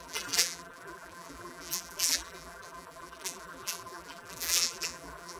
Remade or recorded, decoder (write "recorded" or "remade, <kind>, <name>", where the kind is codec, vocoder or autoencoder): remade, vocoder, BigVGAN v2